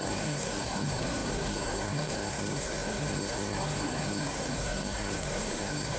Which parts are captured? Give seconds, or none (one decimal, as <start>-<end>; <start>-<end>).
none